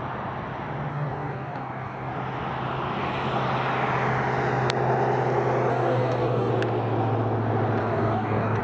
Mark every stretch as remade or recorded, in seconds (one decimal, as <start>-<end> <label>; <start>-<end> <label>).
0.0-0.9 recorded; 0.9-2.1 remade; 2.1-5.7 recorded; 5.7-6.5 remade; 6.5-7.8 recorded; 7.8-8.6 remade